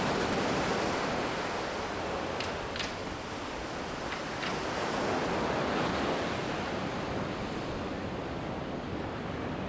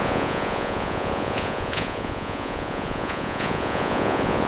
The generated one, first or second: second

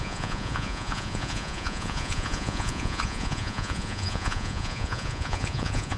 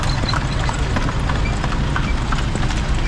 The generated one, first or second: first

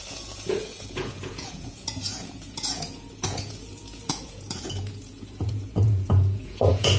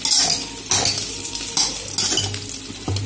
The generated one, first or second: first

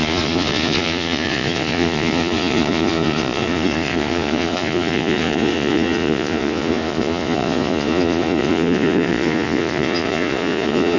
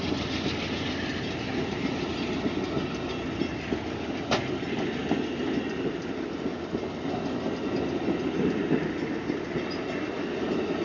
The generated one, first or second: first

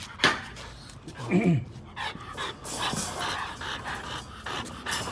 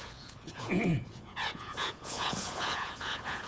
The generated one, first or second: second